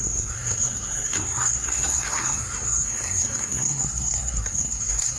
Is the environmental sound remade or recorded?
remade